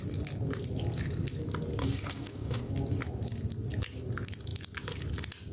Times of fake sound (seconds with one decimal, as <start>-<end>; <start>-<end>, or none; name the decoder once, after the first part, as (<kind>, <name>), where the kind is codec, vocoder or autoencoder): 1.8-2.7 (codec, DAC)